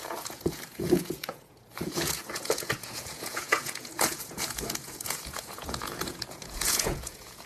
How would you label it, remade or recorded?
remade